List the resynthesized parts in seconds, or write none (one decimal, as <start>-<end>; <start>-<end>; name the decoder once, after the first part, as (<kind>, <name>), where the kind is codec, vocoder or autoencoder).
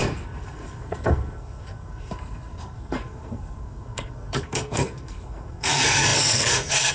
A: 0.0-6.9 (codec, SNAC)